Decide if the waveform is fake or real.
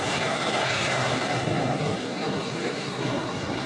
fake